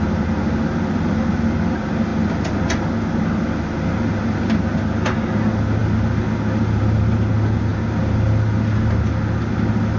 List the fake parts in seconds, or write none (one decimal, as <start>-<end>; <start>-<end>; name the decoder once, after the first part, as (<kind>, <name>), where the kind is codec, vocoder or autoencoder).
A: none